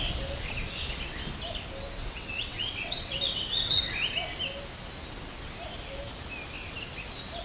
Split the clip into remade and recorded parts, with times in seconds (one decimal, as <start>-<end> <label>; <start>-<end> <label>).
0.0-2.0 recorded; 2.0-3.8 remade; 3.8-7.4 recorded